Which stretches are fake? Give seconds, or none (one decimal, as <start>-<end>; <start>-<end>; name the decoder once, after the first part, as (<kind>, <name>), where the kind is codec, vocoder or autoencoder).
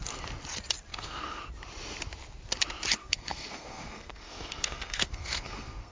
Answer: 0.9-1.4 (codec, SNAC); 3.0-5.9